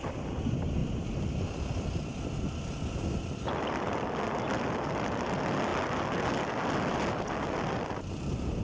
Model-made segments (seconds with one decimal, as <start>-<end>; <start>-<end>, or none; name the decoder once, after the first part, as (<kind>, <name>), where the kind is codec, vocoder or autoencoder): none